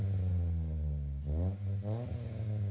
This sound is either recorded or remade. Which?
recorded